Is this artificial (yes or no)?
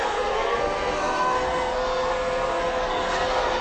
yes